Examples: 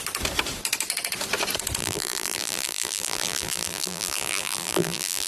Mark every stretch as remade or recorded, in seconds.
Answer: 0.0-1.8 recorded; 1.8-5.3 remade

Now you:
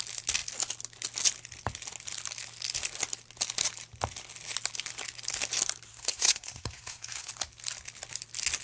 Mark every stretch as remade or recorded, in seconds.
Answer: 0.0-5.9 recorded; 5.9-7.3 remade; 7.3-8.6 recorded

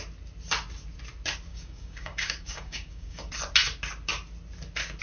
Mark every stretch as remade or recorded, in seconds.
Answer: 0.0-1.5 recorded; 1.5-3.3 remade; 3.3-5.0 recorded

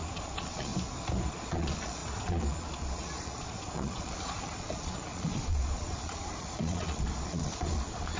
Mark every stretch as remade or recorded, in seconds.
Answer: 0.0-0.7 remade; 0.7-1.3 recorded; 1.3-8.2 remade